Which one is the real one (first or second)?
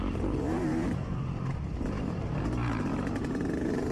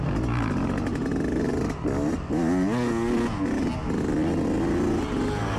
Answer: second